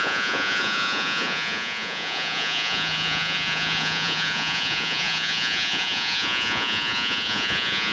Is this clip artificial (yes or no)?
yes